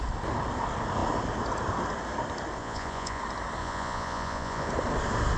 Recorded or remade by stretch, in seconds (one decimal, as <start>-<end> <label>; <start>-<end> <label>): 0.0-2.6 recorded; 2.6-3.2 remade; 3.2-3.6 recorded; 3.6-4.7 remade; 4.7-5.4 recorded